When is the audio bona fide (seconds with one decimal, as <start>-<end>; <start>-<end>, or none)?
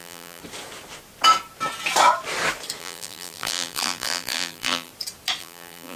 0.4-2.8; 4.9-5.4